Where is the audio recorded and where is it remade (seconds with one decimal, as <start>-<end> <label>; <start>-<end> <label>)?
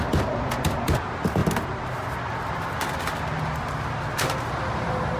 0.0-5.2 recorded